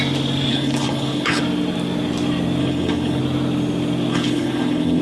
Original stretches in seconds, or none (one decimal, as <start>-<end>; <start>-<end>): 0.0-0.5; 1.4-2.6; 3.2-4.1